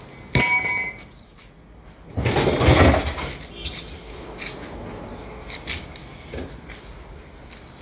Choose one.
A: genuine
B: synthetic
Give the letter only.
A